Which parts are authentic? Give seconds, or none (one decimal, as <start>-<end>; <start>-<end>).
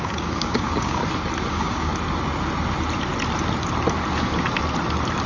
1.0-1.5; 1.9-5.3